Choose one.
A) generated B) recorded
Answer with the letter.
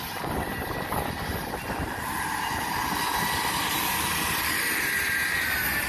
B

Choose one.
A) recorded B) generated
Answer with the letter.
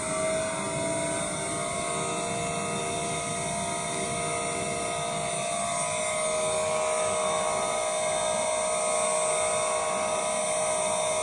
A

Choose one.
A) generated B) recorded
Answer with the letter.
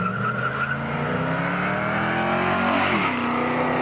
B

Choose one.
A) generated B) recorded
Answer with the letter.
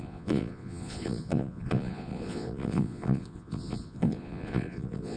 A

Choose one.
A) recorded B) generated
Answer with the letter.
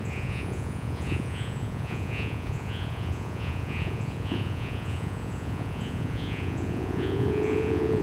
B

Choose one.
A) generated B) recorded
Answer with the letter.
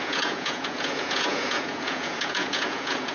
A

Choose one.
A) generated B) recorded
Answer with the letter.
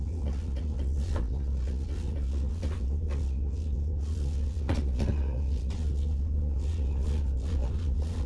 A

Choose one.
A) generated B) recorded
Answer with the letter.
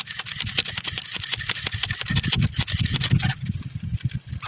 B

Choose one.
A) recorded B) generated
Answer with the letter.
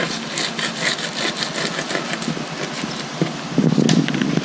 A